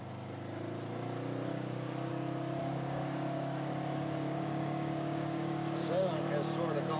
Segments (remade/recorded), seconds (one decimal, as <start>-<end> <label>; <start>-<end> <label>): 0.0-1.5 recorded; 1.5-2.1 remade; 2.1-2.6 recorded; 2.6-6.1 remade; 6.1-7.0 recorded